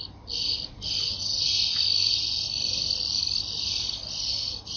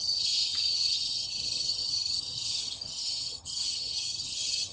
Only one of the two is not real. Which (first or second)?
second